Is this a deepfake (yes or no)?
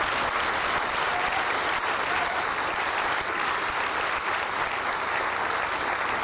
no